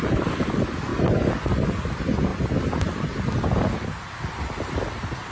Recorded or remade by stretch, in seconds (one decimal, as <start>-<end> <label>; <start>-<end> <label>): 0.0-5.3 recorded